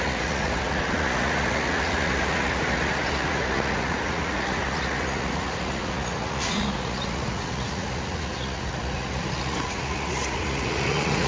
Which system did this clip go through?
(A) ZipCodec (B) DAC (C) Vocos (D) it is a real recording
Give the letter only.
C